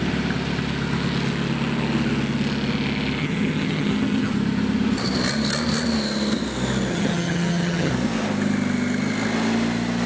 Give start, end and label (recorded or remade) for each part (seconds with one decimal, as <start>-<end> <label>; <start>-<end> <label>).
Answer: 0.0-3.2 recorded; 3.2-4.3 remade; 4.3-6.9 recorded; 6.9-7.9 remade; 7.9-10.1 recorded